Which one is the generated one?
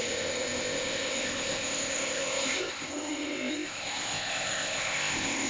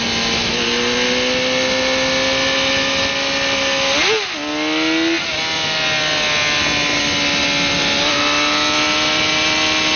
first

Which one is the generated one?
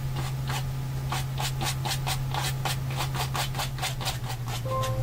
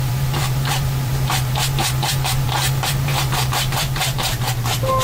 second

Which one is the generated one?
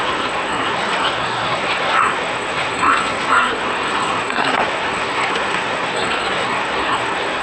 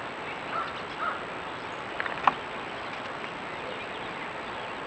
first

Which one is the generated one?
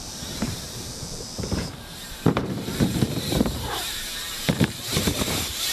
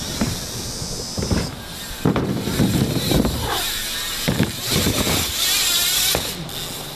first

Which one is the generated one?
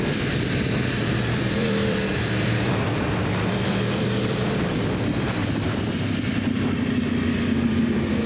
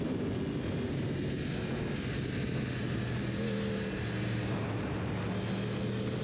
first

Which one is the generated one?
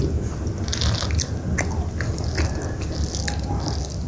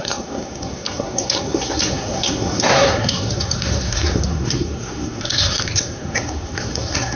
second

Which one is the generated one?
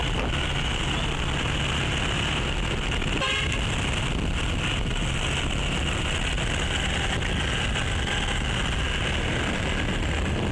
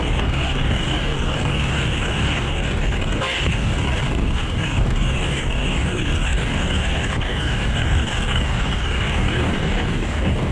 second